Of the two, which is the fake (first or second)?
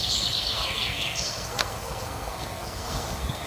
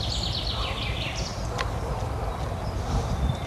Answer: first